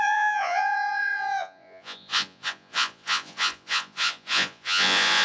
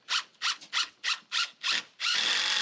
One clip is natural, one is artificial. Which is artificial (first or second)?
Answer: first